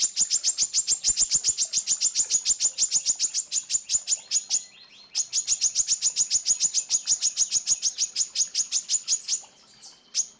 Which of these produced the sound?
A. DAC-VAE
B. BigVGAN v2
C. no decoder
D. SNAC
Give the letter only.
C